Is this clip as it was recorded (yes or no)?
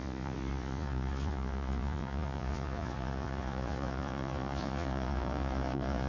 no